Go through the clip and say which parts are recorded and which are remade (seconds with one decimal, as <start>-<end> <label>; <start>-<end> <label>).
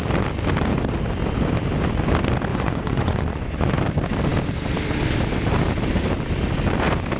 0.0-2.5 recorded; 2.5-3.8 remade; 3.8-7.2 recorded